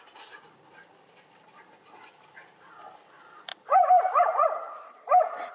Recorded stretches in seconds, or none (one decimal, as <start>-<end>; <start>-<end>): 0.0-3.5